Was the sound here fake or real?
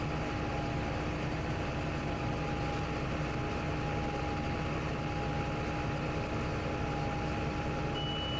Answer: real